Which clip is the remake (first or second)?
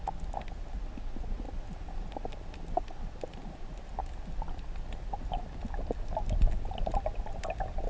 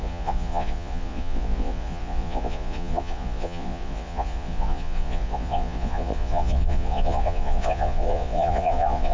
second